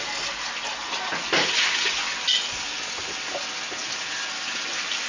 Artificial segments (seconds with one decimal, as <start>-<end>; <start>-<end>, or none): none